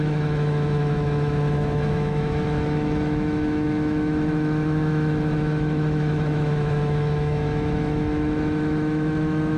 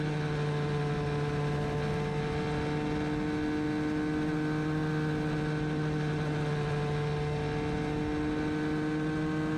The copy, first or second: first